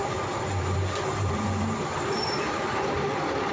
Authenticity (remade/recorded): remade